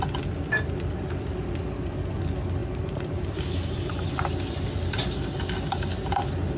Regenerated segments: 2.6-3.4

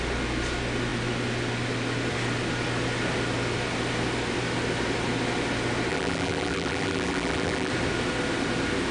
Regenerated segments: 5.9-7.7

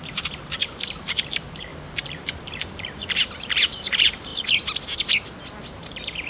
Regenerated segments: 0.0-4.3; 5.6-6.3